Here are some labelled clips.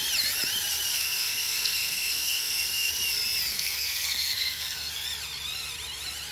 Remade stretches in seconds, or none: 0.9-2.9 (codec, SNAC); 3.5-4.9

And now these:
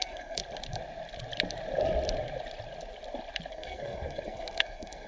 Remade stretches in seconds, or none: 0.0-0.4 (codec, SNAC); 3.5-5.1

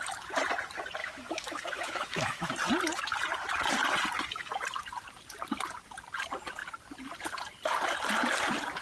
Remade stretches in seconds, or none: 1.0-2.5 (autoencoder, DAC-VAE)

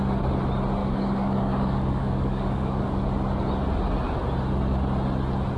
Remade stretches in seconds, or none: 0.8-3.0 (codec, DAC)

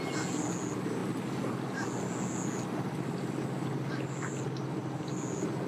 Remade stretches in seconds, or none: none

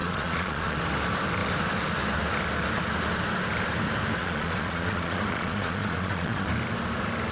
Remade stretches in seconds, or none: 0.0-0.8 (vocoder, Vocos); 4.2-6.5